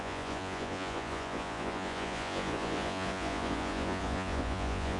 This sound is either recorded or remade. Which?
remade